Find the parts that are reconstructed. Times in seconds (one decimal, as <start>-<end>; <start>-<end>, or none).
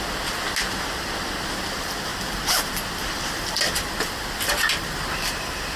none